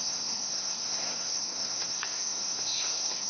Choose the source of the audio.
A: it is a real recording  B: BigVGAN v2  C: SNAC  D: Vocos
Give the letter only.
C